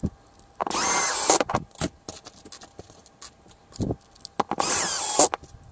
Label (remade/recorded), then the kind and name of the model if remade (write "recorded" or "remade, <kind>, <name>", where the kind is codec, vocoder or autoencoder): recorded